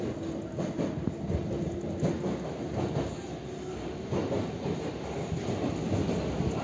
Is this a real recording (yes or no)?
yes